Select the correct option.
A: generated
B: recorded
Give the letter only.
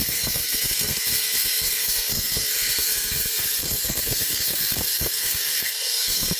A